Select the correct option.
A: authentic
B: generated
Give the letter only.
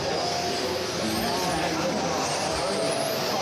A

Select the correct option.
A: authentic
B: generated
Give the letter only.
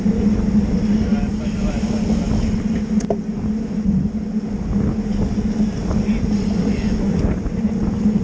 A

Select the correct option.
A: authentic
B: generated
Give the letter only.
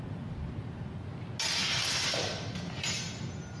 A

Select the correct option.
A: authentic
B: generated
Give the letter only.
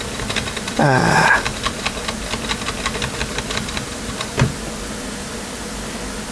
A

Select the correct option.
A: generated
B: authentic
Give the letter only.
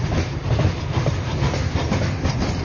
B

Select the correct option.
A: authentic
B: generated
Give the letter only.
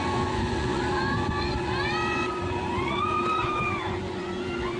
B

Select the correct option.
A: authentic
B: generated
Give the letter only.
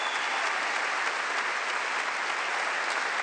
A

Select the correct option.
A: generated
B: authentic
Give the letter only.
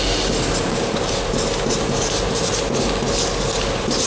B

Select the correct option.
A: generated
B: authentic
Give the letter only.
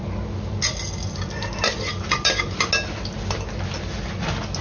B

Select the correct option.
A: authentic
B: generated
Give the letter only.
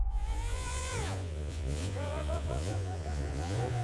B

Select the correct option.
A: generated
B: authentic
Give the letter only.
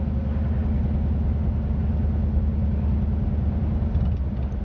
B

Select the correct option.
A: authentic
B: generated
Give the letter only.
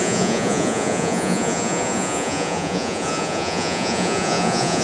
B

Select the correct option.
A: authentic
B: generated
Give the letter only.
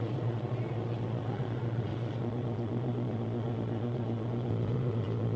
B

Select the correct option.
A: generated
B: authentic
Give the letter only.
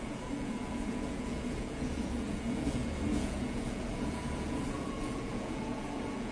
A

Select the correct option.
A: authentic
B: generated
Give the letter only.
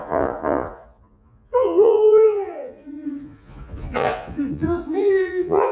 B